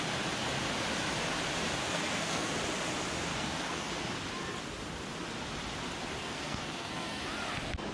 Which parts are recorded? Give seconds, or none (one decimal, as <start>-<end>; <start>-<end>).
0.0-1.8; 2.5-3.3; 3.9-6.2; 7.2-7.9